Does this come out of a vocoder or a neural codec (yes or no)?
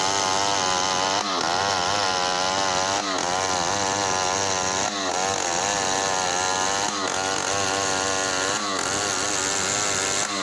no